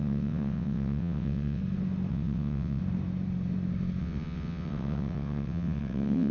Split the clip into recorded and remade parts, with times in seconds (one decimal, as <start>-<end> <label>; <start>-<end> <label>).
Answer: 0.0-1.6 remade; 1.6-2.1 recorded; 2.1-2.8 remade; 2.8-4.0 recorded; 4.0-6.3 remade